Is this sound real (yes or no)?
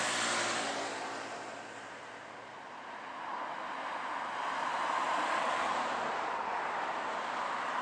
yes